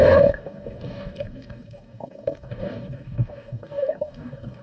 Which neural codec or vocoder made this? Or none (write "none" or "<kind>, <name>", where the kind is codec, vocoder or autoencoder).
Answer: codec, DAC